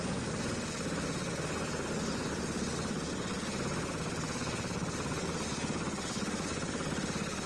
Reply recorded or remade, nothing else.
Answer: recorded